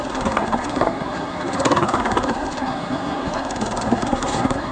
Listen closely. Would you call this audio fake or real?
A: fake